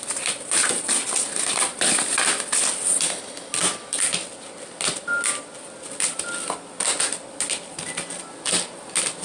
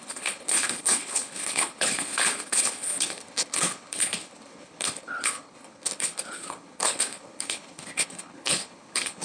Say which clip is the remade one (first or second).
second